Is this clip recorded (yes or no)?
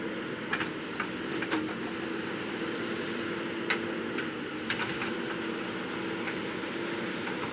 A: yes